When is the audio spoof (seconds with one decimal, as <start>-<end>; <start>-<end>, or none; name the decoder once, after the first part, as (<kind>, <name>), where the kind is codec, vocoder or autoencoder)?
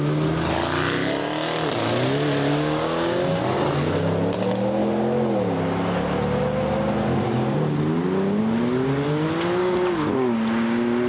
2.5-3.4 (codec, DAC); 9.6-10.1